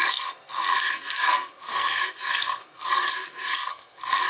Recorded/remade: remade